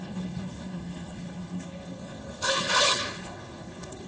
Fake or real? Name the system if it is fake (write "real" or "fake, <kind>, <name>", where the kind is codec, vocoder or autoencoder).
fake, codec, HILCodec